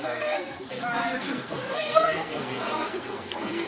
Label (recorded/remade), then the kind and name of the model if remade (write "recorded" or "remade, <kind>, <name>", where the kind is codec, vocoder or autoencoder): remade, codec, SNAC